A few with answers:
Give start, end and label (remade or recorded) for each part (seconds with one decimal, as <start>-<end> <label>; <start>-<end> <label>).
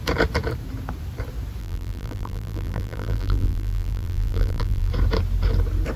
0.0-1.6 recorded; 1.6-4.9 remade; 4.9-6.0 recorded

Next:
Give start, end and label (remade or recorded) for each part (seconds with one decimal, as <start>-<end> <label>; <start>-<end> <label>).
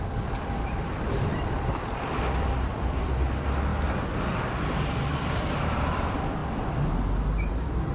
0.0-3.7 remade; 3.7-4.4 recorded; 4.4-6.4 remade; 6.4-7.5 recorded; 7.5-7.9 remade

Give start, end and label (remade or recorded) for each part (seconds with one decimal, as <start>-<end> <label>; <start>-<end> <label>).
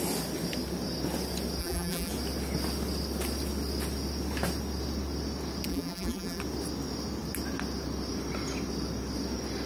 0.0-1.6 recorded; 1.6-2.1 remade; 2.1-5.7 recorded; 5.7-6.4 remade; 6.4-9.7 recorded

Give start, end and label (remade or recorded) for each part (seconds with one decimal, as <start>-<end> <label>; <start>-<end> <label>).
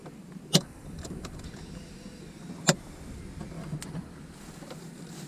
0.0-3.2 remade; 3.2-5.3 recorded